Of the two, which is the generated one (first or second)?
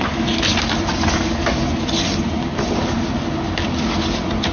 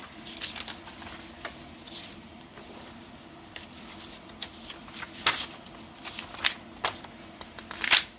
second